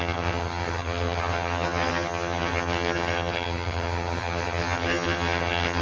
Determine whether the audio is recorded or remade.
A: remade